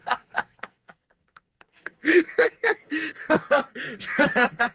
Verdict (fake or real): fake